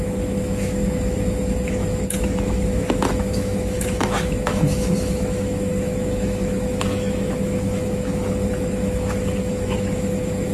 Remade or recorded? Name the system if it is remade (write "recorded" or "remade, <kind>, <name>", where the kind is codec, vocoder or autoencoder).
remade, autoencoder, DAC-VAE